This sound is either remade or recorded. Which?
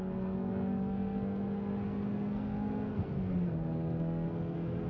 remade